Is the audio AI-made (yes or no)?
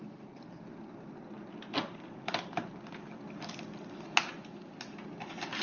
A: no